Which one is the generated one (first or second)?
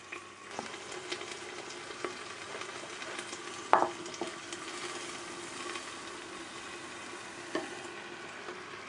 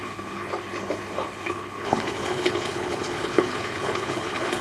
second